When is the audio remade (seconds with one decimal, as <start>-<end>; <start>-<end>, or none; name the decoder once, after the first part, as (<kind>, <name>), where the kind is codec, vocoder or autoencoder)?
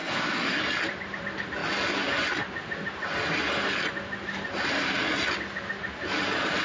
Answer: 0.0-0.6 (codec, SNAC)